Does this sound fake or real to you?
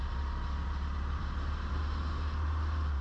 real